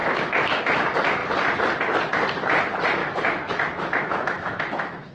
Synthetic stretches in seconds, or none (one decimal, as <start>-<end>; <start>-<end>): 0.0-0.6; 3.0-5.1